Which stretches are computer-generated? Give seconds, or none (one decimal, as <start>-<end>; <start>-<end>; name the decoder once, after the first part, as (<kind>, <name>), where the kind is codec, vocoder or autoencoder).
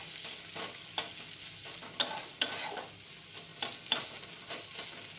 none